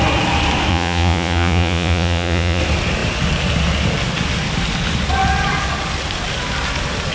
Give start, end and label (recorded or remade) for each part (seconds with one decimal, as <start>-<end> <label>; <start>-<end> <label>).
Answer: 0.0-0.7 recorded; 0.7-2.6 remade; 2.6-7.1 recorded